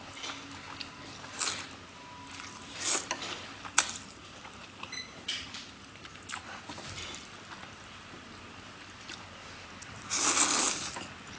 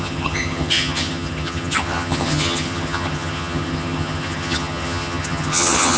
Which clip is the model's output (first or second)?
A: second